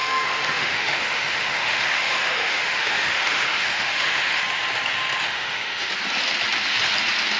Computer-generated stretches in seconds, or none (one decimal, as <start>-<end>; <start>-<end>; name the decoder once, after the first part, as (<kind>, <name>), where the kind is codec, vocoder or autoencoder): 0.0-4.4 (autoencoder, DAC-VAE); 5.2-5.9